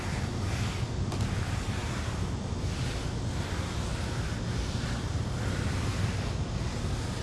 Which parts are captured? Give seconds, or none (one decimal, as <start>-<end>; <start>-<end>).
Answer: 0.0-7.2